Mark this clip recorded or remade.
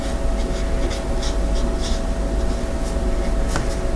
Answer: recorded